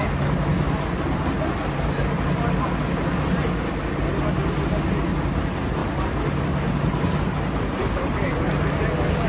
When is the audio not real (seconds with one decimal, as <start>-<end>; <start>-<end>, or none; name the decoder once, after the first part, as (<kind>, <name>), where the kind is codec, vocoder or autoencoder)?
7.8-8.7 (vocoder, BigVGAN v2)